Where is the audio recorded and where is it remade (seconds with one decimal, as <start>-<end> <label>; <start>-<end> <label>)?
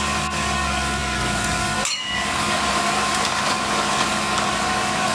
0.0-5.1 remade